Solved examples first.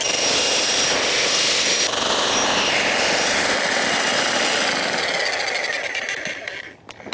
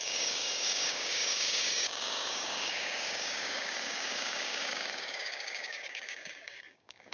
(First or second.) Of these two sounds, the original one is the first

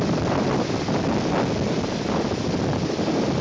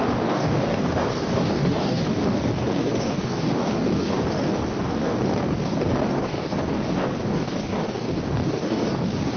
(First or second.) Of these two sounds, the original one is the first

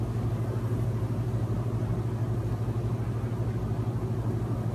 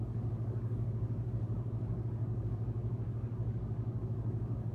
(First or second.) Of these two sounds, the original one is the first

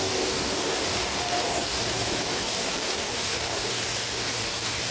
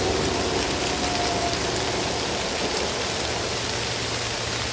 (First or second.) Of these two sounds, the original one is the second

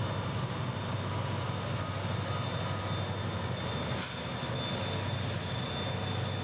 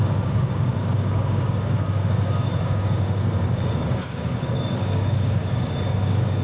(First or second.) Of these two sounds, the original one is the first